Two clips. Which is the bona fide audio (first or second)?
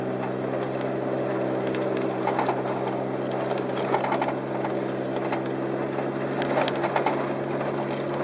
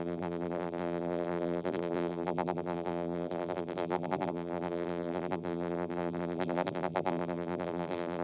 first